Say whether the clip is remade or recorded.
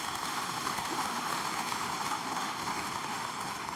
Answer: remade